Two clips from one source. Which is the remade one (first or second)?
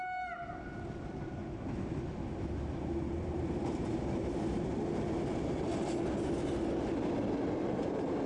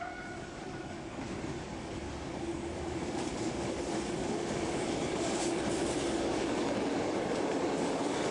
second